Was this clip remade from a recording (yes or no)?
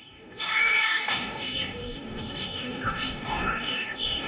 yes